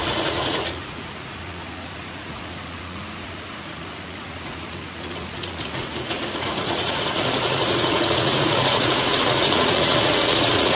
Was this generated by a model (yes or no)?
yes